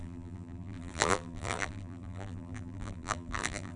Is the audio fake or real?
fake